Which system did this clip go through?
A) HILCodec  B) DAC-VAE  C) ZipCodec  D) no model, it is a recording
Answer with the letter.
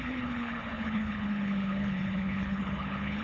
A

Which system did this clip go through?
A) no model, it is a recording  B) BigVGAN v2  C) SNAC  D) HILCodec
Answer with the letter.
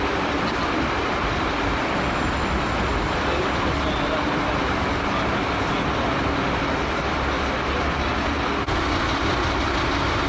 A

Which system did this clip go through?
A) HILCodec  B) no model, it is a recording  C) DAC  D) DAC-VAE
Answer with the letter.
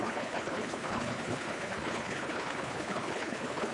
A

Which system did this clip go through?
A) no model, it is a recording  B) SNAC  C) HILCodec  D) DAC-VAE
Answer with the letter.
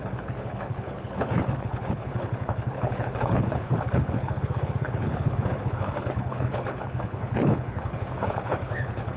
C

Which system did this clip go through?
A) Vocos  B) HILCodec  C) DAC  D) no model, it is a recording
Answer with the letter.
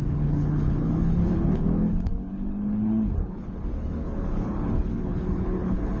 B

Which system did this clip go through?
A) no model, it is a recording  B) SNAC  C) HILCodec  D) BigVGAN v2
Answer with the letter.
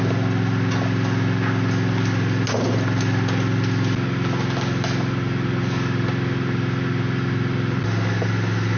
A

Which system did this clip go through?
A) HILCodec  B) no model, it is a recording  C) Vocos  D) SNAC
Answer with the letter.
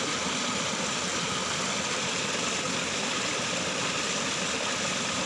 B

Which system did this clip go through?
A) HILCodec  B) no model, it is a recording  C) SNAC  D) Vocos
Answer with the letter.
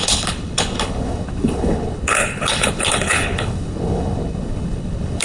A